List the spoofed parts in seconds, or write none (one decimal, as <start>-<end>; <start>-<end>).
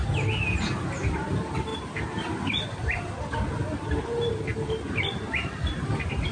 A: 0.9-1.7; 5.3-6.3